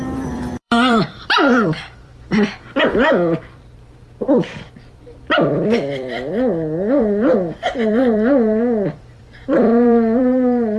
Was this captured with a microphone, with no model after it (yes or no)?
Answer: no